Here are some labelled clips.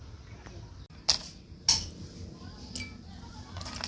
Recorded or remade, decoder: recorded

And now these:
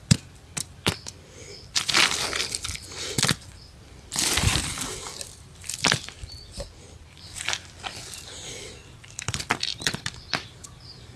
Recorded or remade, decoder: remade, vocoder, BigVGAN v2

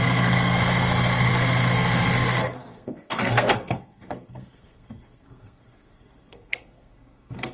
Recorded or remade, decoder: remade, codec, SNAC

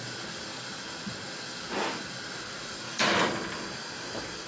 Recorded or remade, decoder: recorded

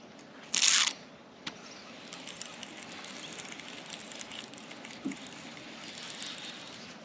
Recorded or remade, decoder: recorded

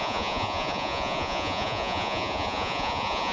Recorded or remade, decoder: remade, vocoder, Vocos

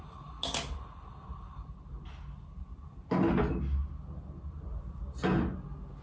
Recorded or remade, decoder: recorded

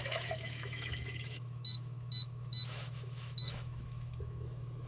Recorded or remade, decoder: remade, autoencoder, DAC-VAE